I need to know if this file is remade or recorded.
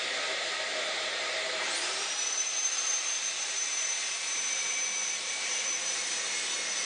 remade